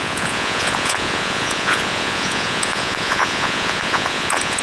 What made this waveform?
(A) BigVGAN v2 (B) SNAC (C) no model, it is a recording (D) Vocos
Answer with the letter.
D